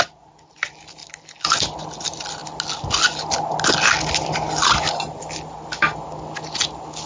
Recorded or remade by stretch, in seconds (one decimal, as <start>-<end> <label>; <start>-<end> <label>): 0.0-7.1 recorded